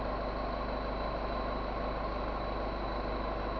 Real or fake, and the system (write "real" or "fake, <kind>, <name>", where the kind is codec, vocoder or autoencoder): real